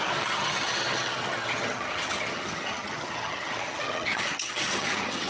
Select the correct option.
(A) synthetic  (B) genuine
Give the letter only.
A